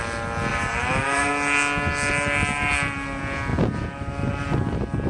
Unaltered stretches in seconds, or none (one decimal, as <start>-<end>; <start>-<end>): 0.0-0.5; 1.3-5.1

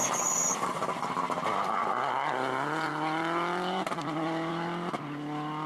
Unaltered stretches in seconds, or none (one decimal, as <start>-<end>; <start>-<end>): 0.0-0.4; 1.1-1.8; 4.5-5.7

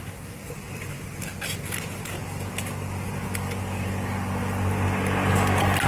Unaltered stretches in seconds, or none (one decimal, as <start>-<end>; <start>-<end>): 0.0-5.9

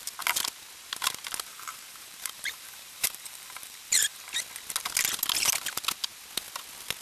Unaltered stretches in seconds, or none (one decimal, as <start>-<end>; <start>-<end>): 0.0-1.5; 4.2-7.0

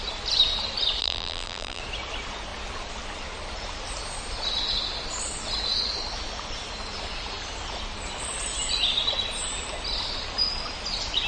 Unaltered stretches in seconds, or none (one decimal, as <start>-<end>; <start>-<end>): 0.0-1.0; 1.8-11.3

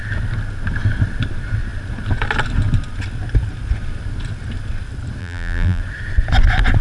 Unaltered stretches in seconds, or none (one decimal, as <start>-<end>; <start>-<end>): 0.0-5.2; 5.8-6.8